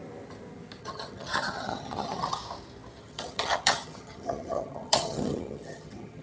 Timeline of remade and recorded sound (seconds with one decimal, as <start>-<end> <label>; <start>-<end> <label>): 0.0-0.8 recorded; 0.8-2.4 remade; 2.4-3.0 recorded; 3.0-6.2 remade